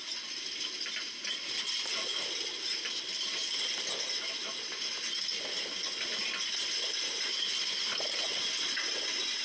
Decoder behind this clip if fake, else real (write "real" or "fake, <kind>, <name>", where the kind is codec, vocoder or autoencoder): real